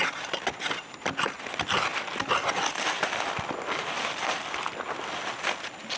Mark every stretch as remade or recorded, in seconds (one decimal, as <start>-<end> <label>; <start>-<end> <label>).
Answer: 0.0-6.0 recorded